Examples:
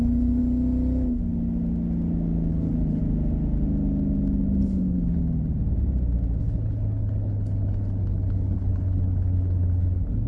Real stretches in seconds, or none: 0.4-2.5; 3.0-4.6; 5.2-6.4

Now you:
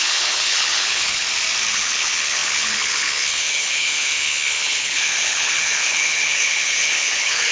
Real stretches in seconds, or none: 1.2-1.7

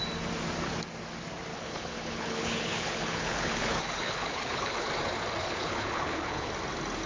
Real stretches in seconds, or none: 0.0-1.5; 4.9-5.4; 6.5-7.1